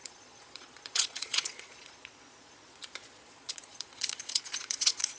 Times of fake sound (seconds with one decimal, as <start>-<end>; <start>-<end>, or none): 0.0-5.2